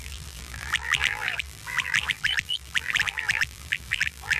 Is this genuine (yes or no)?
no